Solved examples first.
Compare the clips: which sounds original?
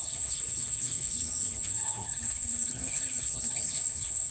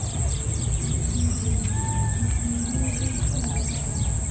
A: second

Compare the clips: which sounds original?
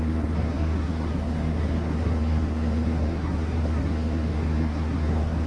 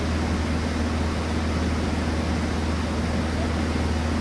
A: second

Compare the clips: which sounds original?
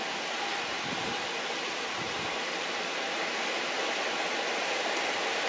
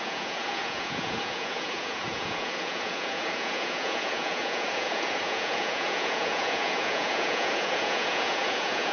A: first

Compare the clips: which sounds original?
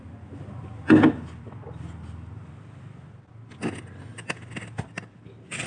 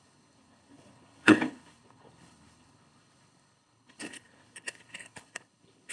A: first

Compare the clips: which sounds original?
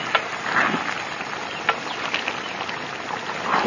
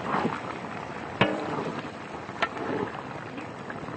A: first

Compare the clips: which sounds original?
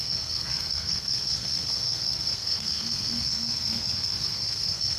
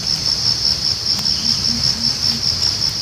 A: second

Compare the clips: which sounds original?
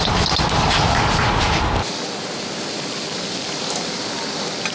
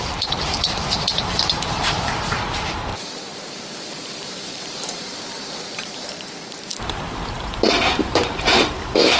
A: first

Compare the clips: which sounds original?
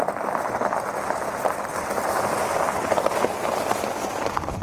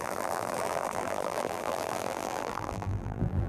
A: first